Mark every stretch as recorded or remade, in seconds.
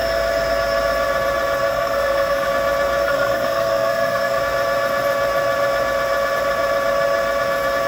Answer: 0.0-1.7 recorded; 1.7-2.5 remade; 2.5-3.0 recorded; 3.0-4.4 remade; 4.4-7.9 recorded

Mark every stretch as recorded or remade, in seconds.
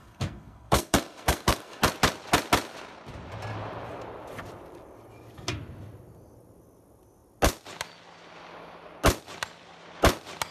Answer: 0.0-1.8 remade; 1.8-10.5 recorded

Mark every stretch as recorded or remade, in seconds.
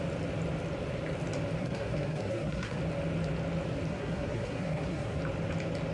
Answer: 0.0-1.6 recorded; 1.6-2.8 remade; 2.8-3.9 recorded; 3.9-5.2 remade; 5.2-5.9 recorded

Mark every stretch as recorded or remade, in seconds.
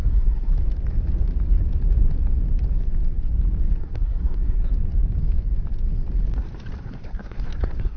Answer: 0.0-0.5 remade; 0.5-3.8 recorded; 3.8-4.7 remade; 4.7-6.8 recorded; 6.8-8.0 remade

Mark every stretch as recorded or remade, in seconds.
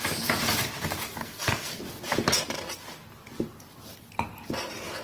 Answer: 0.0-1.2 recorded; 1.2-1.8 remade; 1.8-5.0 recorded